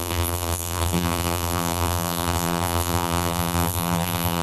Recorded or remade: remade